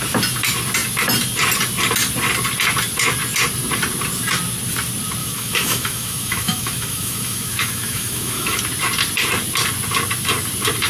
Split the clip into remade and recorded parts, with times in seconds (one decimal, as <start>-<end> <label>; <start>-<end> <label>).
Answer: 0.0-5.2 recorded; 5.2-8.6 remade; 8.6-10.9 recorded